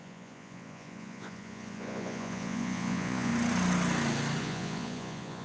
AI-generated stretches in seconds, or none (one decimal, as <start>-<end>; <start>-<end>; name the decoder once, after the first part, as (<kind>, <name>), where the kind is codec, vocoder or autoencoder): 0.0-3.3 (vocoder, Vocos); 4.4-5.4